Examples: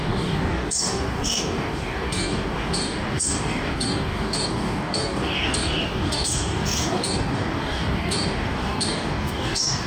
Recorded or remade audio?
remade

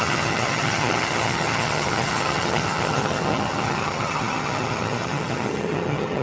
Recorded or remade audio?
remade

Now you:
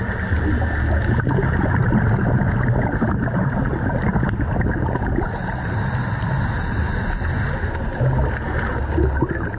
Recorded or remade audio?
recorded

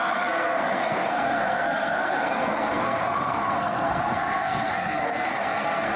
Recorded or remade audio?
remade